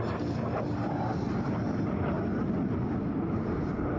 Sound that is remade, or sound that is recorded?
remade